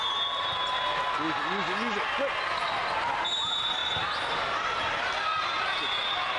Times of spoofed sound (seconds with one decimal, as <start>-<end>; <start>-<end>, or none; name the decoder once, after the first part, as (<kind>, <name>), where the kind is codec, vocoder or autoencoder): none